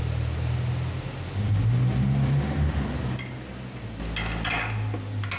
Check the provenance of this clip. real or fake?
real